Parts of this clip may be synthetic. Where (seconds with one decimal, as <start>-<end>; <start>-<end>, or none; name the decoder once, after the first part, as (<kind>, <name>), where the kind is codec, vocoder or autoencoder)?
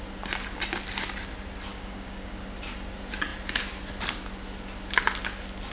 1.7-2.4 (codec, DAC)